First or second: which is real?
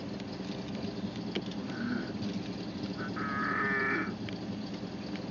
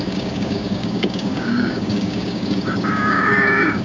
first